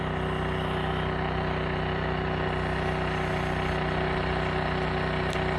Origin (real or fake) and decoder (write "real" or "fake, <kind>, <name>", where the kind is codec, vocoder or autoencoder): real